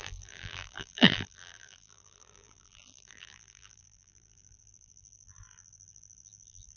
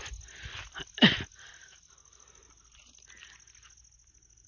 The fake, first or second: first